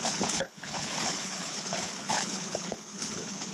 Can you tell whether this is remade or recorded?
remade